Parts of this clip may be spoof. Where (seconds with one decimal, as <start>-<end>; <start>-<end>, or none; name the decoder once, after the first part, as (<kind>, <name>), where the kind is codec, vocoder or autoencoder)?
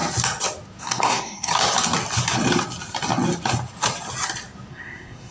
0.8-1.5 (codec, SNAC); 4.7-5.3